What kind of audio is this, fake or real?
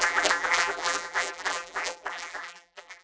fake